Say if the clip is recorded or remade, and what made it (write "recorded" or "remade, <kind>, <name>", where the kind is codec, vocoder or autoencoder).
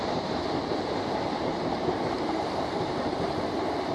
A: remade, vocoder, BigVGAN v2